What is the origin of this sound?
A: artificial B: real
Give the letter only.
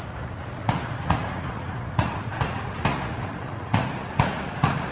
A